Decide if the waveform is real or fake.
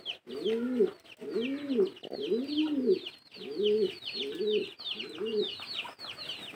real